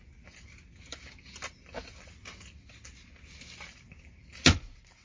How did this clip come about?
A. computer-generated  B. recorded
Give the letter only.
B